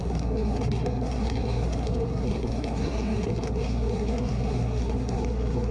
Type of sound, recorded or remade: remade